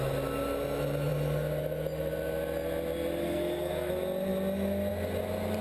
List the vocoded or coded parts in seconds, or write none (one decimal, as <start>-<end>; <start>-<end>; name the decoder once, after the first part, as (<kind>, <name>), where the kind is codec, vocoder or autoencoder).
3.2-3.9 (codec, SNAC)